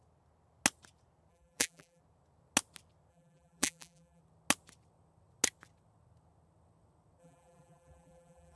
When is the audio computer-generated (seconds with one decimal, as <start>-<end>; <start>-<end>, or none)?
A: 1.3-2.0; 3.1-4.2; 7.2-8.6